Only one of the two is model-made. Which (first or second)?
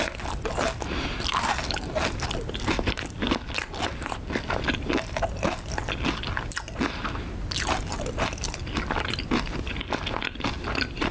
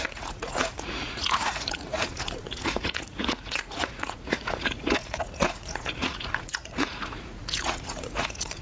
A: second